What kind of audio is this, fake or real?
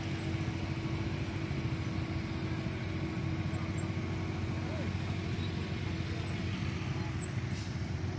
real